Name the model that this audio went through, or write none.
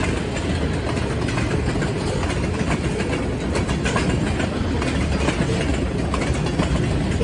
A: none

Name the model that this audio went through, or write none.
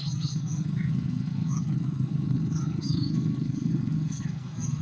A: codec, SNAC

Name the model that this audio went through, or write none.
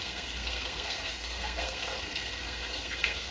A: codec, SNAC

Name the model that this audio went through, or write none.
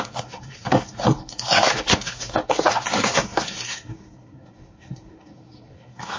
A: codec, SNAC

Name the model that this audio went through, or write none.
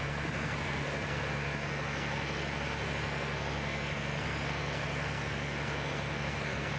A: codec, SNAC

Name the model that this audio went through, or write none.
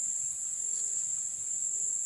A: none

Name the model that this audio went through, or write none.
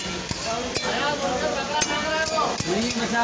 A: none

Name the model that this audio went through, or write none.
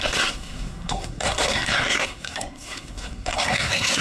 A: codec, SNAC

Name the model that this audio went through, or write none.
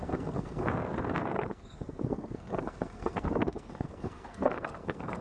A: codec, SNAC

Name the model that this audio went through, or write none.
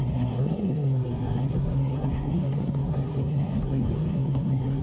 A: codec, SNAC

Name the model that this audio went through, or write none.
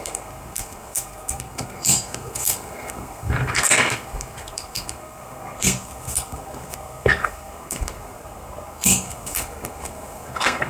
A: codec, SNAC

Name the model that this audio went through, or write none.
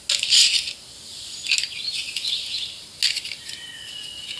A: none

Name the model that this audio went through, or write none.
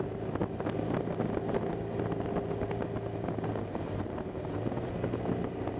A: none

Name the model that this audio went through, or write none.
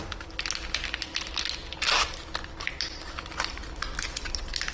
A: none